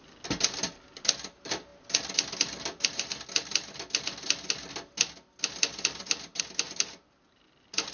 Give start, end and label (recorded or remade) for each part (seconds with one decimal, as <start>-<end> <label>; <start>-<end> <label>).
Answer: 0.0-7.9 recorded